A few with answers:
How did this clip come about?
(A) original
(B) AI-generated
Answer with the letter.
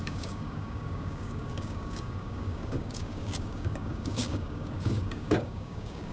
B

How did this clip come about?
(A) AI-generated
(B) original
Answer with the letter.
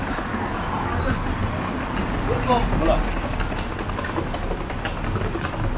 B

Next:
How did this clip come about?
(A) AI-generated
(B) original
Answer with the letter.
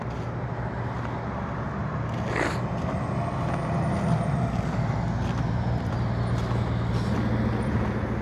B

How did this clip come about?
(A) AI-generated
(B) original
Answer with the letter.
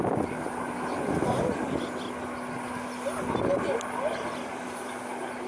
B